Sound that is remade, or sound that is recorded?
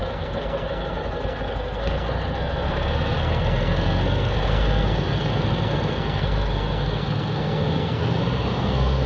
remade